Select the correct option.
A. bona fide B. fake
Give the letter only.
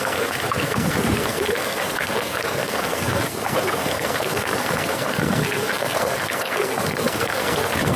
B